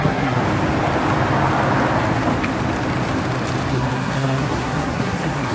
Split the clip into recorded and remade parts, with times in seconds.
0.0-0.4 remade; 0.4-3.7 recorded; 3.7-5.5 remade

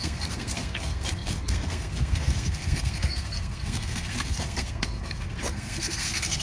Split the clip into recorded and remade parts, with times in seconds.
0.0-6.4 remade

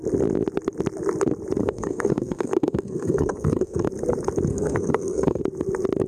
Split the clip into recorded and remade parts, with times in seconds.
0.0-1.6 recorded; 1.6-3.9 remade; 3.9-4.5 recorded; 4.5-5.4 remade; 5.4-6.1 recorded

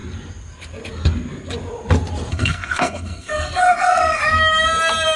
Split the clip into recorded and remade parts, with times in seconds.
0.0-2.3 recorded; 2.3-4.2 remade; 4.2-5.2 recorded

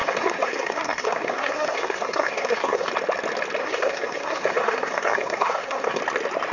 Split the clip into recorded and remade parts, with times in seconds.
0.0-2.9 remade; 2.9-3.6 recorded; 3.6-6.0 remade; 6.0-6.5 recorded

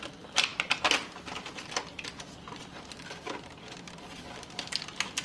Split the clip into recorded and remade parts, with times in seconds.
0.0-5.2 recorded